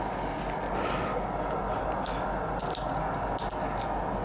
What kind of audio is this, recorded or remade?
recorded